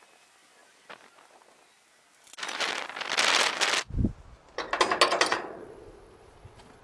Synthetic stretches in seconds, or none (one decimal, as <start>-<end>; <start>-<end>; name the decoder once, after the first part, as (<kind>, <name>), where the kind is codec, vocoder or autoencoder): 5.3-6.8 (vocoder, Vocos)